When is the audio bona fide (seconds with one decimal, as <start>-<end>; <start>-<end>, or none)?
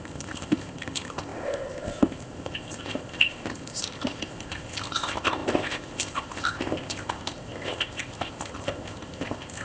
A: none